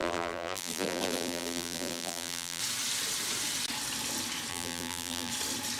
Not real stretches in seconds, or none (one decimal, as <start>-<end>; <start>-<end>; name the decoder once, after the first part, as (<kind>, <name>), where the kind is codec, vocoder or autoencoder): 0.0-2.6 (vocoder, BigVGAN v2); 4.5-5.3